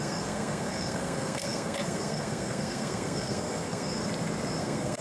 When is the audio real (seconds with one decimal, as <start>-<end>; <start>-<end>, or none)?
4.0-4.6